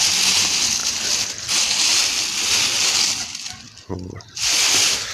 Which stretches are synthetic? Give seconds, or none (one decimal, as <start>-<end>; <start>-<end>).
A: none